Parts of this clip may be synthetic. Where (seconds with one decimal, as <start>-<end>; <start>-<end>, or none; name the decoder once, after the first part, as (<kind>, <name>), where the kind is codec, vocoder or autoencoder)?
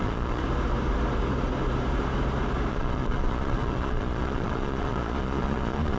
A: 0.0-0.4 (vocoder, Vocos); 2.7-6.0